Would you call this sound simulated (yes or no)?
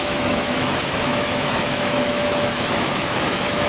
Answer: yes